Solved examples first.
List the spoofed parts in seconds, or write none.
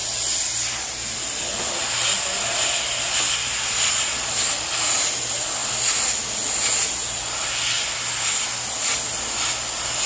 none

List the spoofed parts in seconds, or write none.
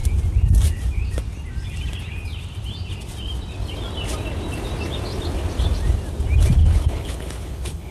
6.6-7.9 (codec, HILCodec)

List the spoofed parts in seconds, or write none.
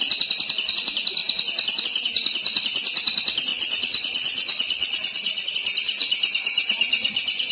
3.5-5.5 (vocoder, Vocos)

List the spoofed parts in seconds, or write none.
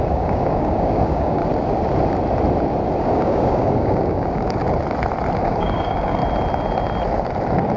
0.0-1.4 (codec, DAC); 3.0-4.6; 5.4-6.2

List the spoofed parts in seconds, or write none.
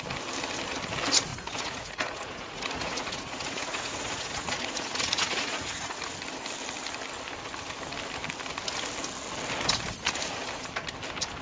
1.3-6.1 (vocoder, Vocos)